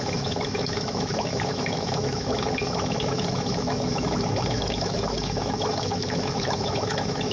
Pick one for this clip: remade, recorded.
remade